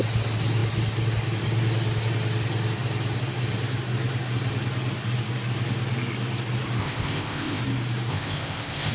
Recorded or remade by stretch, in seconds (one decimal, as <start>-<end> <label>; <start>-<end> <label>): 0.0-6.8 recorded; 6.8-7.6 remade; 7.6-8.1 recorded; 8.1-8.9 remade